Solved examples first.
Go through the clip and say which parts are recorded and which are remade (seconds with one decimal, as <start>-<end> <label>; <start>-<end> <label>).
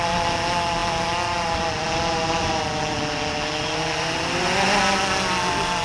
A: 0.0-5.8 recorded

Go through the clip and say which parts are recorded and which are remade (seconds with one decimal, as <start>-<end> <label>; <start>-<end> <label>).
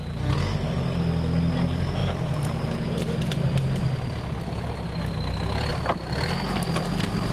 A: 0.0-2.0 recorded; 2.0-4.7 remade; 4.7-5.7 recorded; 5.7-6.8 remade; 6.8-7.3 recorded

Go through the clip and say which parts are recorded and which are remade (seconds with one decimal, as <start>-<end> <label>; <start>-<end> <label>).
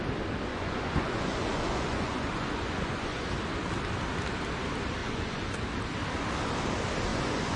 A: 0.0-0.5 recorded; 0.5-3.3 remade; 3.3-5.0 recorded; 5.0-5.5 remade; 5.5-7.1 recorded; 7.1-7.6 remade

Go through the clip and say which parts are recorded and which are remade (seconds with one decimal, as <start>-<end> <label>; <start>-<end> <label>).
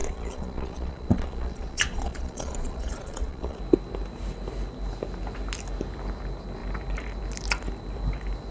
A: 0.0-3.6 remade; 3.6-8.5 recorded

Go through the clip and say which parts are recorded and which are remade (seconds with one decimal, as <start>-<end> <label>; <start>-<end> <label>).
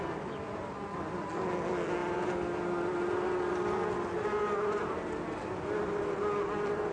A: 0.0-6.9 recorded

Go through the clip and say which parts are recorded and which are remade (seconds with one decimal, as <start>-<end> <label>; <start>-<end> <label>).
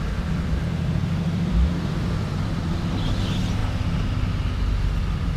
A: 0.0-1.0 recorded; 1.0-2.7 remade; 2.7-5.4 recorded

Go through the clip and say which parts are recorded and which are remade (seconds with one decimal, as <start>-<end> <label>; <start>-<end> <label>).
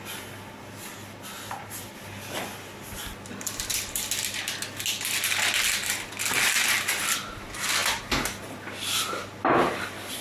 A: 0.0-10.2 recorded